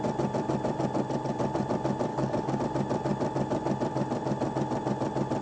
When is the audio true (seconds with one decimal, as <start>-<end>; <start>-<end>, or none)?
0.0-2.1; 2.6-5.4